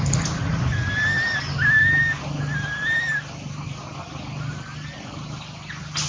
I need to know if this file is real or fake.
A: real